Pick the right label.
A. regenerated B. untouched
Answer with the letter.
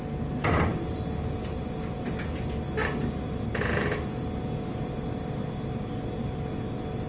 B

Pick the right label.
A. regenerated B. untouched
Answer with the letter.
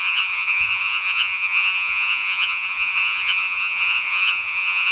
A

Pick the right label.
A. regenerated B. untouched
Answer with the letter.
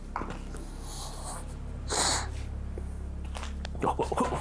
B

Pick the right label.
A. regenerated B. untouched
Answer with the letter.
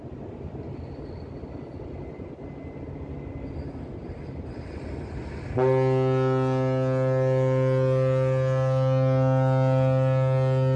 B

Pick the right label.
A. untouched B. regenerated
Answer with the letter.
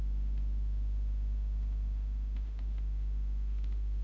B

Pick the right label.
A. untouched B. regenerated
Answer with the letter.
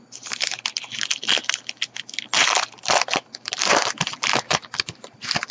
A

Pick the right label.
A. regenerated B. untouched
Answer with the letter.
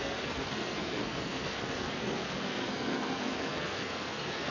A